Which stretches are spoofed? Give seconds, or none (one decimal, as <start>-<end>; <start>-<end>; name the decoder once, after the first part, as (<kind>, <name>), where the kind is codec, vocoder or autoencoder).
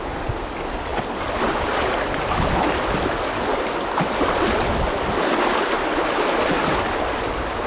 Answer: none